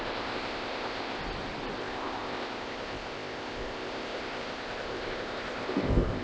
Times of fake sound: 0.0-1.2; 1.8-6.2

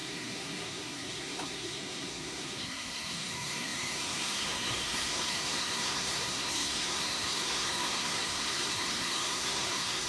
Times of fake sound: 0.0-10.1